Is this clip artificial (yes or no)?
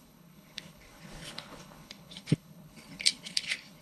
yes